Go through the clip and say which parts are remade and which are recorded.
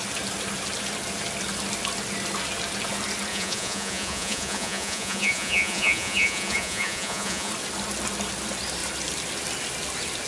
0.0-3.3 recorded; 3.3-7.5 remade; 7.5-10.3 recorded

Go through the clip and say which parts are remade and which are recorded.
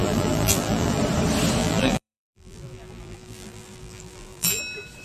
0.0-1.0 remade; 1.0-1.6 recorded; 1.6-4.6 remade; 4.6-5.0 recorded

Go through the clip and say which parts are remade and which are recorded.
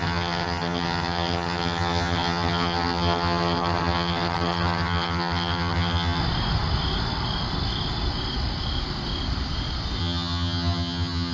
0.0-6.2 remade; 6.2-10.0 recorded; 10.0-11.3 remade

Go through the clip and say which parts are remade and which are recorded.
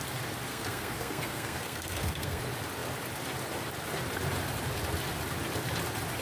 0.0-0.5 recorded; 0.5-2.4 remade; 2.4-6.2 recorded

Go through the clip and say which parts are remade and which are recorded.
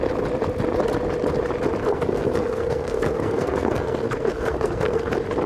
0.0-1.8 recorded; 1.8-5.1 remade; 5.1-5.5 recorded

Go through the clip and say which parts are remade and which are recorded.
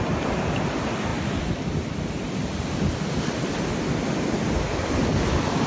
0.0-5.7 recorded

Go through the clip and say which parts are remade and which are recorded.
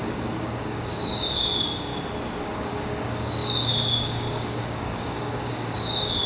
0.0-1.9 remade; 1.9-2.4 recorded; 2.4-6.3 remade